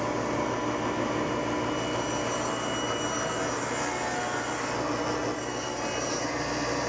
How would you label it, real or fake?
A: real